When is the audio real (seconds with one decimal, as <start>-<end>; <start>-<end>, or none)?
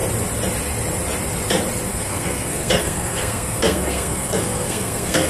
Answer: 0.0-1.9